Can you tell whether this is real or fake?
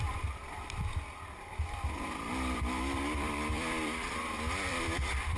fake